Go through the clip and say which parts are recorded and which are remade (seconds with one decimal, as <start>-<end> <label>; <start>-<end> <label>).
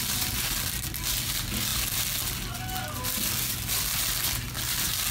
0.0-5.1 recorded